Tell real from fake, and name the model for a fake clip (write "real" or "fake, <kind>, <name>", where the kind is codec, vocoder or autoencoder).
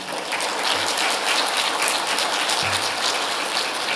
real